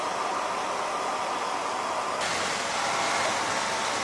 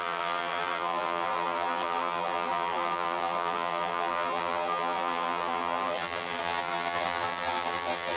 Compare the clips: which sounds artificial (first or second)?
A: second